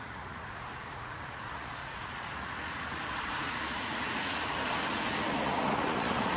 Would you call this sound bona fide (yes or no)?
no